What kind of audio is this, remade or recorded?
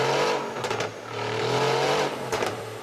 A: remade